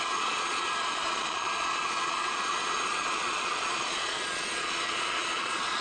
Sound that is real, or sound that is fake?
fake